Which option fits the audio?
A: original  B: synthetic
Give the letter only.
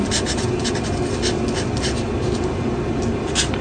A